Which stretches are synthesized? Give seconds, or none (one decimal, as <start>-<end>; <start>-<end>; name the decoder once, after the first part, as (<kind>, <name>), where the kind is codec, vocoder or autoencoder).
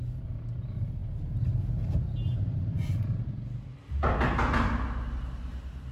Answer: none